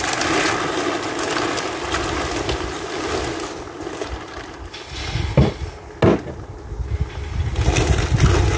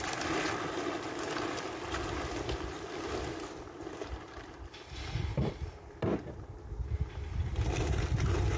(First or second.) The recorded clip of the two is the first